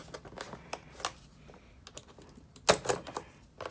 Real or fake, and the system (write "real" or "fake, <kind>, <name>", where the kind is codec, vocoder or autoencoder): real